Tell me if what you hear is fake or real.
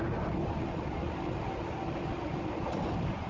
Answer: real